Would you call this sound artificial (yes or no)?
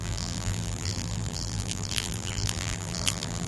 yes